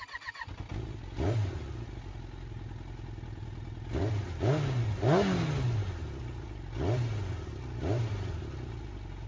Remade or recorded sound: recorded